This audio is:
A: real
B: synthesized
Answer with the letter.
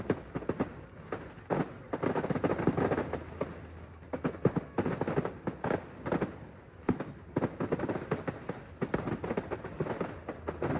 A